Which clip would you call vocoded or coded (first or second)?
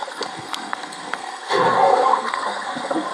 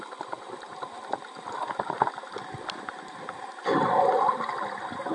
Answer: first